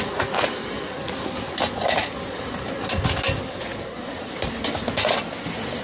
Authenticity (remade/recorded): recorded